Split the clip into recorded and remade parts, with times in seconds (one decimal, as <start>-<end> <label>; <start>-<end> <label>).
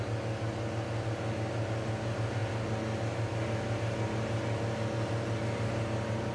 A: 0.0-6.3 recorded